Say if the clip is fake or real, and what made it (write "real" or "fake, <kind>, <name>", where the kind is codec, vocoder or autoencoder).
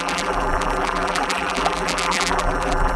fake, vocoder, BigVGAN v2